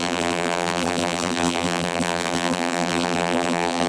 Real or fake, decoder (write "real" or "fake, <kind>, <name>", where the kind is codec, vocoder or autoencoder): fake, vocoder, BigVGAN v2